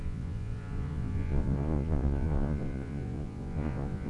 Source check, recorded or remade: remade